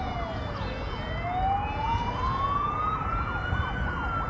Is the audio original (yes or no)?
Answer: yes